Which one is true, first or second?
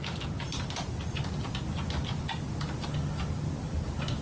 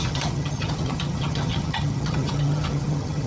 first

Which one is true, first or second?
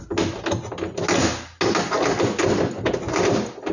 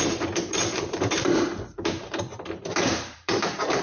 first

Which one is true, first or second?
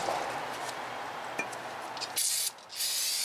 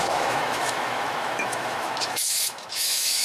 first